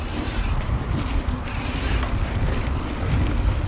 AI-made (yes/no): no